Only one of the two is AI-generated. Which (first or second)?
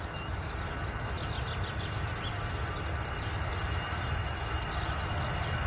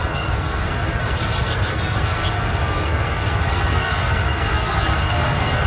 second